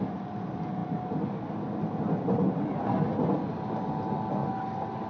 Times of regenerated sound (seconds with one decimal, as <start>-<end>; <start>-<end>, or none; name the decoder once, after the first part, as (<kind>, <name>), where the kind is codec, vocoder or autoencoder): none